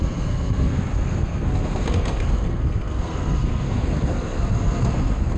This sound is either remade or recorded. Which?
remade